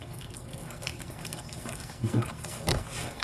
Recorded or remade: remade